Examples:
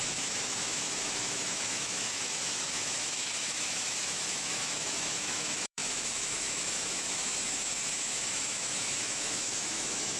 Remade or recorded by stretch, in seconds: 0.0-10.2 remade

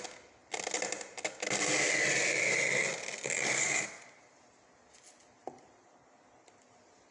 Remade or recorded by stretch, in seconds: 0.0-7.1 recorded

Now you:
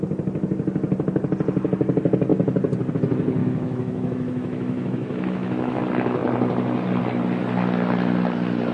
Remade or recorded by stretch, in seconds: 0.0-3.4 recorded; 3.4-5.8 remade; 5.8-8.7 recorded